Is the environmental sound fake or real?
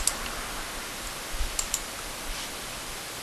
real